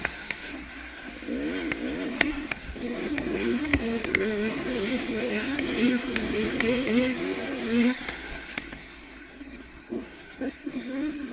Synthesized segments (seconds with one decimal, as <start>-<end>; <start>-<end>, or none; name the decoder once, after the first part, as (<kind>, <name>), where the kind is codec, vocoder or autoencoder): 0.0-1.1 (codec, SNAC); 2.1-11.3